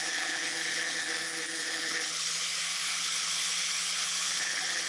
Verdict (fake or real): fake